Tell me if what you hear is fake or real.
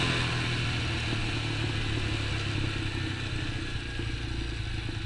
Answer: real